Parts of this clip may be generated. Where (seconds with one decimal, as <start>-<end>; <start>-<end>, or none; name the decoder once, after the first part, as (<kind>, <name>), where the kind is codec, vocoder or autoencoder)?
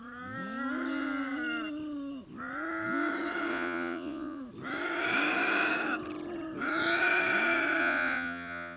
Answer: 3.5-4.4 (vocoder, Vocos); 7.8-8.8